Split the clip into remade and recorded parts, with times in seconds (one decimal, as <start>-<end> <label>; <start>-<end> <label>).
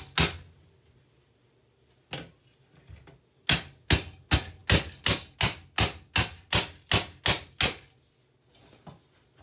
0.0-9.4 recorded